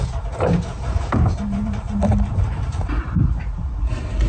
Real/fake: fake